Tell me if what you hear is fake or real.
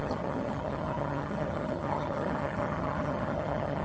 fake